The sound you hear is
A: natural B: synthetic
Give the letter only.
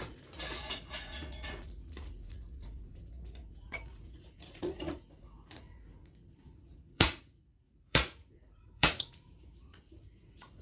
B